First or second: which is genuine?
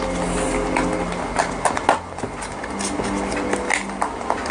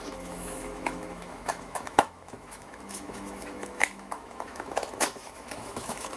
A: first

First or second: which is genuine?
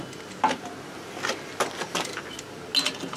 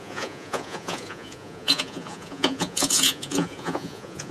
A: first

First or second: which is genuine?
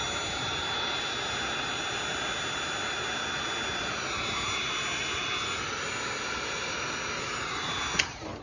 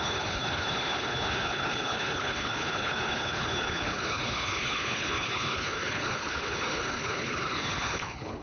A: first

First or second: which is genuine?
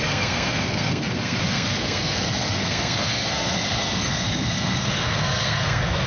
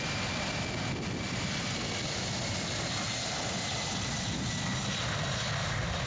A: second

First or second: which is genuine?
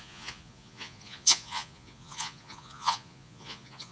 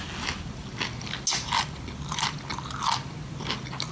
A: second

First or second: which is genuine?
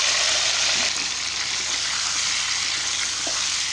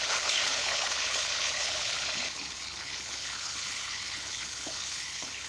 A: first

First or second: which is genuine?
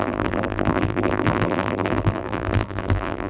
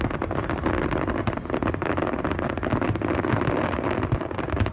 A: second